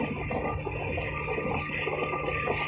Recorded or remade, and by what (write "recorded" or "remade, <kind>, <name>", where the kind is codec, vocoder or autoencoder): recorded